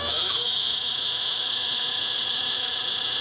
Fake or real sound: fake